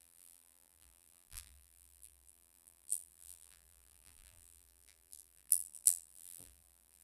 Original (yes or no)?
no